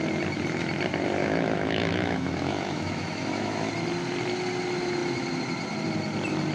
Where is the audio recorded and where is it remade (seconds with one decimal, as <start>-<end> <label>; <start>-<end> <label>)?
0.0-1.2 recorded; 1.2-3.7 remade; 3.7-6.5 recorded